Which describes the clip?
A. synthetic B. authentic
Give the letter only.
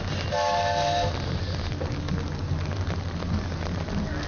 B